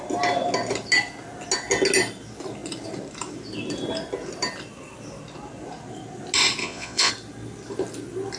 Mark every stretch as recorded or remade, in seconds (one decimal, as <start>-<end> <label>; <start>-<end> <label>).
0.0-6.6 recorded; 6.6-7.1 remade; 7.1-8.4 recorded